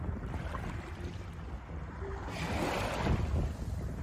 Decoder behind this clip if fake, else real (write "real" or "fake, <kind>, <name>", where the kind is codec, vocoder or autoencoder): real